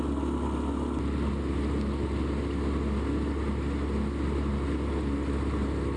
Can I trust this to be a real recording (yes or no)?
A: yes